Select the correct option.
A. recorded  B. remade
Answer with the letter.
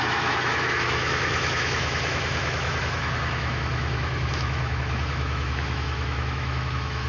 B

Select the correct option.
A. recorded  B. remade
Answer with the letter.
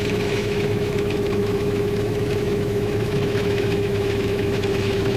B